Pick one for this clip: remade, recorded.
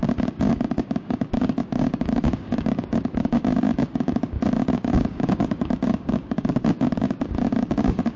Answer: remade